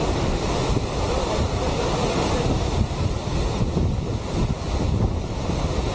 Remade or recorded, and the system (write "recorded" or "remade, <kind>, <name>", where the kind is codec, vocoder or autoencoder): recorded